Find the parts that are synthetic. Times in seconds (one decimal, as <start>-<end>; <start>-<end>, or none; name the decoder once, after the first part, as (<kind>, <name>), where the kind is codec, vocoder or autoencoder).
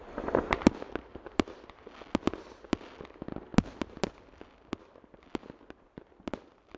none